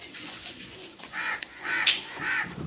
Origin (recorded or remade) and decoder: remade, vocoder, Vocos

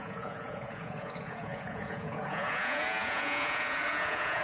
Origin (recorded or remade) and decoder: remade, vocoder, Vocos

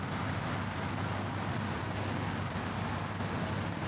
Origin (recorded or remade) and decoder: recorded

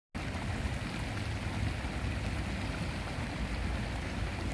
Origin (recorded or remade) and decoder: recorded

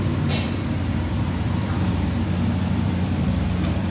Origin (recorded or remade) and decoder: remade, vocoder, BigVGAN v2